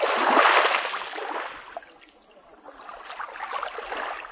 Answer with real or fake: real